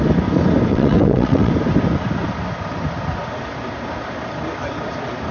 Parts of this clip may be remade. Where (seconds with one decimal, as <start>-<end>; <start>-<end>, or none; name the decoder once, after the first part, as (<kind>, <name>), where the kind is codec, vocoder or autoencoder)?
0.7-1.5 (vocoder, WaveNeXt)